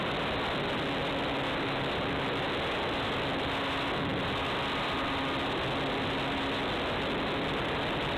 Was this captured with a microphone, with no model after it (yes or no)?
yes